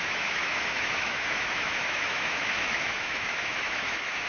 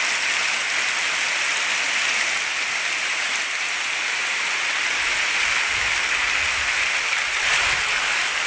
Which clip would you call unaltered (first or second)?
second